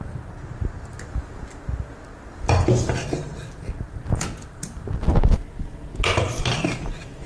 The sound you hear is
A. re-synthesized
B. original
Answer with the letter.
B